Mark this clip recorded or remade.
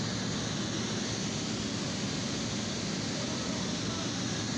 recorded